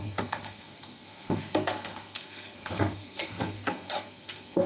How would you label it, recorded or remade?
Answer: remade